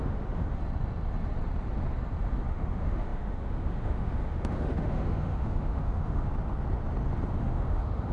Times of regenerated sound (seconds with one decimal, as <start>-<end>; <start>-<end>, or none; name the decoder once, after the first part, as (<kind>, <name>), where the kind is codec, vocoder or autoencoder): 0.0-0.6 (autoencoder, DAC-VAE); 2.5-6.3; 7.3-8.1